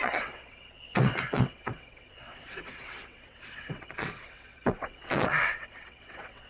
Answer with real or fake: fake